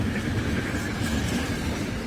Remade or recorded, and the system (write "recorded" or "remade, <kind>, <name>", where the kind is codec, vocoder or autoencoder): recorded